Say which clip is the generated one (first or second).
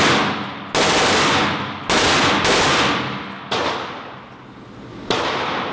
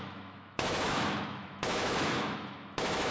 second